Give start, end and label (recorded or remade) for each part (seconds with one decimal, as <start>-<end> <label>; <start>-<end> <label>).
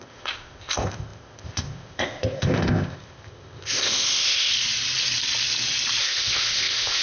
0.0-4.5 remade; 4.5-6.0 recorded; 6.0-7.0 remade